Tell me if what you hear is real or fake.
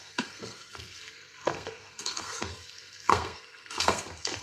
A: fake